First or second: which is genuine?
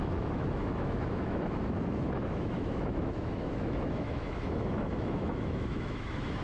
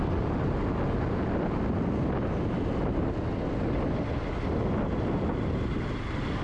second